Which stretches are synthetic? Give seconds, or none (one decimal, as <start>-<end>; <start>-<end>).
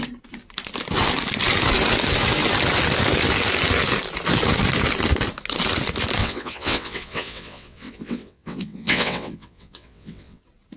6.2-10.4